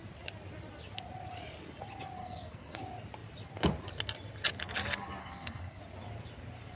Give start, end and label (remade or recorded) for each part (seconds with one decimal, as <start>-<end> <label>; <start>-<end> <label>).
0.0-2.2 recorded; 2.2-2.8 remade; 2.8-5.2 recorded; 5.2-5.8 remade; 5.8-6.8 recorded